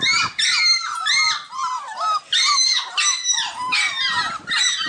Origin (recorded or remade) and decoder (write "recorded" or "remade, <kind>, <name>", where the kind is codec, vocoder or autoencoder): recorded